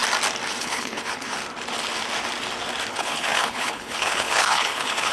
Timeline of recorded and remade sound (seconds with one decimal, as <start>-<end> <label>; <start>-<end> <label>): 0.0-0.6 recorded; 0.6-1.4 remade; 1.4-2.9 recorded; 2.9-5.1 remade